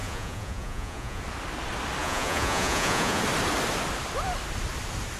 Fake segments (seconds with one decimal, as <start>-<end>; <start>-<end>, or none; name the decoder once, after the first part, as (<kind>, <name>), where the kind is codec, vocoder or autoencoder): 0.0-1.2 (vocoder, Vocos); 2.0-3.2

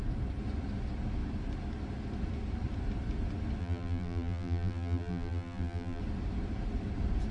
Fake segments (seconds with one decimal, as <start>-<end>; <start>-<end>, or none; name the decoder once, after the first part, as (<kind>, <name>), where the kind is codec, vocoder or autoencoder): 3.6-6.0 (vocoder, BigVGAN v2)